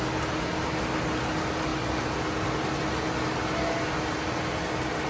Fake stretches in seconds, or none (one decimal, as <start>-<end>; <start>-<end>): none